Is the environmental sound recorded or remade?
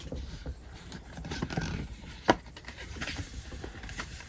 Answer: remade